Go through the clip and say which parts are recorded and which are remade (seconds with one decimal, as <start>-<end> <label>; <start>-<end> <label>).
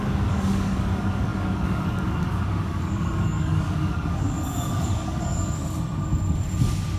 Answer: 0.0-5.6 remade; 5.6-7.0 recorded